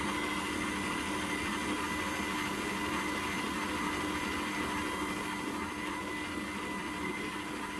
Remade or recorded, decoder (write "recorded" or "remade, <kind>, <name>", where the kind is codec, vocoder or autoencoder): recorded